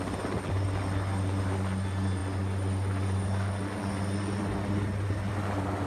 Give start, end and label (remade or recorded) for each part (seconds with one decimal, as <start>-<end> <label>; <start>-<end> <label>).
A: 0.0-5.9 recorded